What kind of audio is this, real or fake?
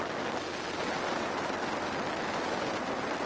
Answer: real